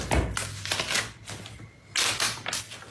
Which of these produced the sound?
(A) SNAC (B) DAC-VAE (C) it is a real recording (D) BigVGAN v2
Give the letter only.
C